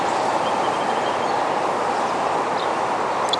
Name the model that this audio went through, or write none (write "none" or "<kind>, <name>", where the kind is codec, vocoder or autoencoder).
none